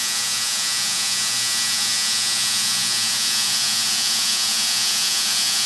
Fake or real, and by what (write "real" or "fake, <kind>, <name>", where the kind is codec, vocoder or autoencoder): fake, vocoder, Vocos